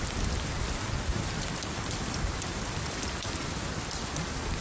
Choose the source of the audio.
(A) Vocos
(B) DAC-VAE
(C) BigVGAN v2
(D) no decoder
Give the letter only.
D